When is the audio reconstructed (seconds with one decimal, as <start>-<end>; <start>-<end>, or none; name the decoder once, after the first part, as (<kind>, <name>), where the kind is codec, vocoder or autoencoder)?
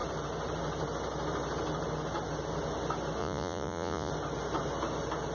3.2-4.1 (vocoder, Vocos)